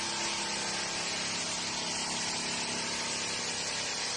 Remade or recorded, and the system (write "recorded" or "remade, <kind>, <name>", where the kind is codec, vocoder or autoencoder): recorded